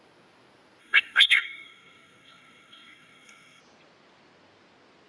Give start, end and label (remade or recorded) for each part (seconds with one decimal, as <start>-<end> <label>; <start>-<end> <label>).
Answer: 0.0-0.8 recorded; 0.8-3.6 remade; 3.6-5.1 recorded